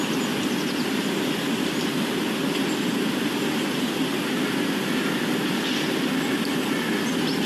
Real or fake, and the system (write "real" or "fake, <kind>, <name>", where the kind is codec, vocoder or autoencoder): real